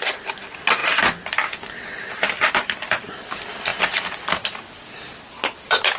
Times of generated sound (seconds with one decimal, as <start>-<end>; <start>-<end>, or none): 0.8-2.0